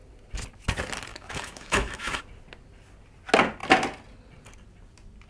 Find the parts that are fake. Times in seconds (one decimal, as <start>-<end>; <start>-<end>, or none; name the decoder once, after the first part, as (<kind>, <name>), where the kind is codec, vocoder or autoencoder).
1.1-2.2 (autoencoder, DAC-VAE)